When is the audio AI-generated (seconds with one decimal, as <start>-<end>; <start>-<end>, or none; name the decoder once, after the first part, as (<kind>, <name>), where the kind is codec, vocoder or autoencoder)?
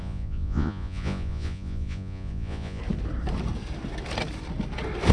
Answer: 0.0-2.8 (vocoder, Vocos)